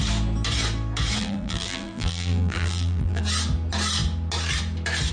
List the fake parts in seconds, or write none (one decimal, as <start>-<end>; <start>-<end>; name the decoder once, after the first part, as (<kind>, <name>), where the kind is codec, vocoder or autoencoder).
1.2-3.2 (vocoder, BigVGAN v2)